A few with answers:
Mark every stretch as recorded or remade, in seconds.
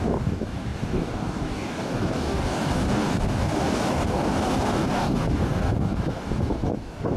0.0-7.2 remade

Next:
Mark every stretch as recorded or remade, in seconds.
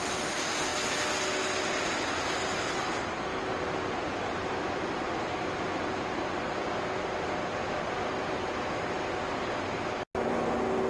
0.0-10.9 recorded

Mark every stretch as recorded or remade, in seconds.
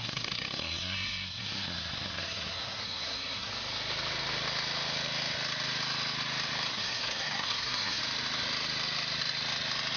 0.0-3.5 remade; 3.5-6.7 recorded; 6.7-8.0 remade; 8.0-10.0 recorded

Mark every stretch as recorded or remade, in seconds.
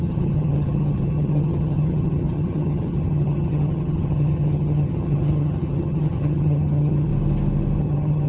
0.0-7.1 remade; 7.1-7.8 recorded; 7.8-8.3 remade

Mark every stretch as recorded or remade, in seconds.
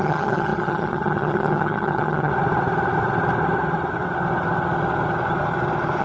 0.0-2.3 remade; 2.3-6.0 recorded